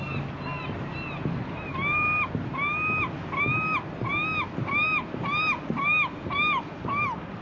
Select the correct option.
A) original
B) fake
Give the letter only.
A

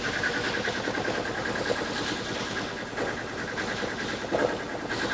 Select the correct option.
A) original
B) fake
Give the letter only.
A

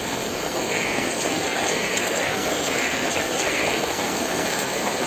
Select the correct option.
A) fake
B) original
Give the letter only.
A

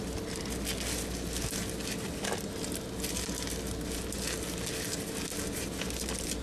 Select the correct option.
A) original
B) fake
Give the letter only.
A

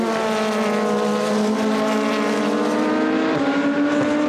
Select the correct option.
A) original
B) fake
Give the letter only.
A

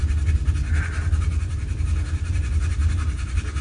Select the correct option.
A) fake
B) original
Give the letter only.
B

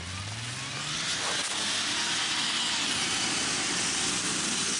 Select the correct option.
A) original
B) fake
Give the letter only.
A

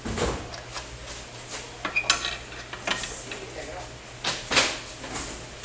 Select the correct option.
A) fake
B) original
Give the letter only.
B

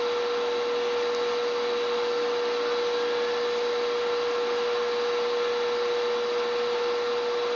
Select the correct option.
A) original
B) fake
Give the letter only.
A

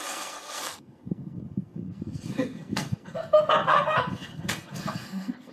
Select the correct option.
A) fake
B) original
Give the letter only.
A